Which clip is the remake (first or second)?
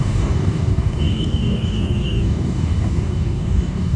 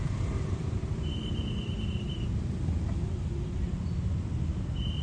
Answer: first